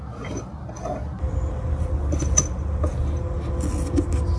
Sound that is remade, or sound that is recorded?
recorded